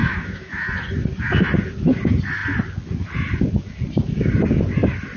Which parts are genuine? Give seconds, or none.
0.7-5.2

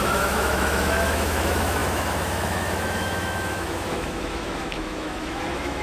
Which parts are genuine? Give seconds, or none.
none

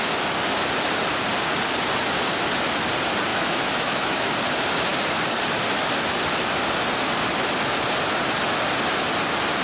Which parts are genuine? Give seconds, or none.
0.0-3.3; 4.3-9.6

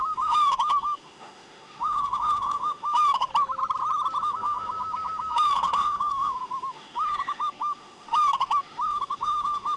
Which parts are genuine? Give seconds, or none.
3.3-4.2

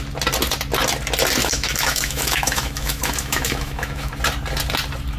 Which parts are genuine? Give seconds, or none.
0.0-1.4; 4.1-5.2